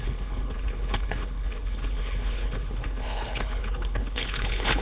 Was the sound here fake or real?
fake